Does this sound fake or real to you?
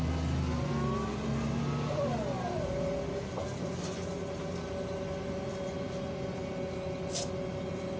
real